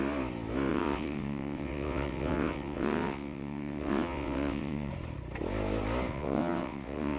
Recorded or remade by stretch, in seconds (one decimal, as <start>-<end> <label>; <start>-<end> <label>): 0.0-0.7 recorded; 0.7-4.9 remade; 4.9-6.1 recorded; 6.1-7.2 remade